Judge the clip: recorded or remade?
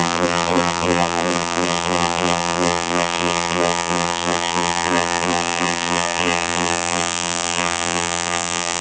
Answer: remade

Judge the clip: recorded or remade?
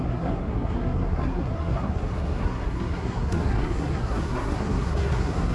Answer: remade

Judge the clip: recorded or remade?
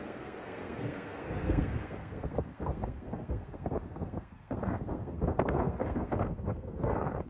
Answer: remade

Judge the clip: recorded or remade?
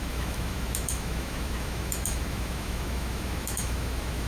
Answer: remade